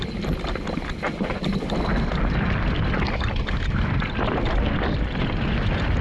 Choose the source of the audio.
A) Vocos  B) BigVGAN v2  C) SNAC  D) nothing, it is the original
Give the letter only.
D